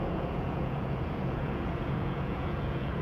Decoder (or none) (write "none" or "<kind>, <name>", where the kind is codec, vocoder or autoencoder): vocoder, Vocos